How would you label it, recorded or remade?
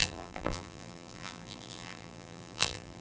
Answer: remade